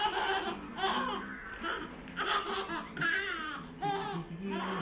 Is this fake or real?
real